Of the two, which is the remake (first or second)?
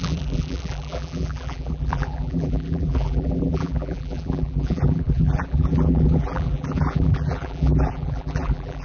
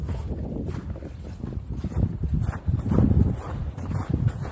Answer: first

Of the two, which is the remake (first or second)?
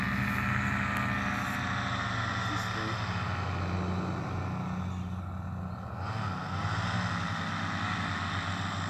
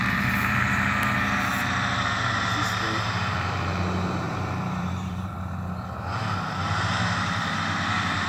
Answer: second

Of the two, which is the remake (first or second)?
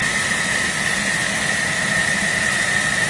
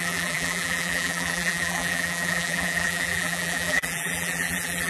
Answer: second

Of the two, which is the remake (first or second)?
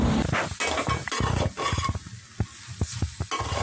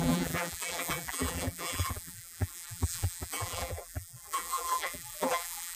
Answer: second